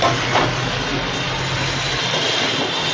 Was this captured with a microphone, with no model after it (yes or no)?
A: yes